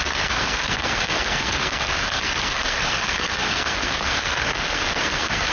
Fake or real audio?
fake